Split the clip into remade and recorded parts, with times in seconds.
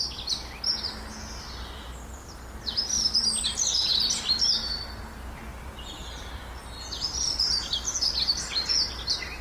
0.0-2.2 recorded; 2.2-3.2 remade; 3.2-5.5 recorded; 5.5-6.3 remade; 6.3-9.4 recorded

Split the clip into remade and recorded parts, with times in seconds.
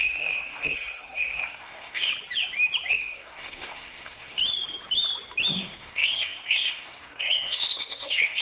0.0-2.1 remade; 2.1-2.9 recorded; 2.9-4.4 remade; 4.4-5.5 recorded; 5.5-8.4 remade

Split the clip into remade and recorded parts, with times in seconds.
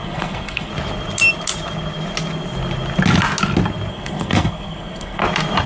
0.0-0.7 remade; 0.7-3.9 recorded; 3.9-5.2 remade; 5.2-5.7 recorded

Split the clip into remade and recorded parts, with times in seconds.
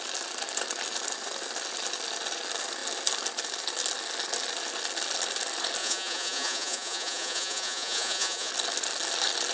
0.0-5.8 recorded; 5.8-8.5 remade; 8.5-9.5 recorded